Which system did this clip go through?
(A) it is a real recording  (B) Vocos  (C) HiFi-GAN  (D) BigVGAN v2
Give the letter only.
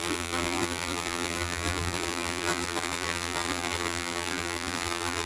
D